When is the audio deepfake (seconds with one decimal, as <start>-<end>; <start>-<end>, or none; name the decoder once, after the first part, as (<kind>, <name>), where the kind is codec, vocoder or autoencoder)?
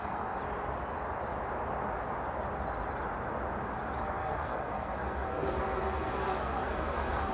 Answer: 0.0-0.4 (codec, SNAC); 4.0-7.3